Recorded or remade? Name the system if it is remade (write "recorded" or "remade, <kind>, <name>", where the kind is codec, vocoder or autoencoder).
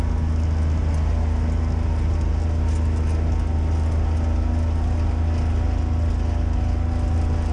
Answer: recorded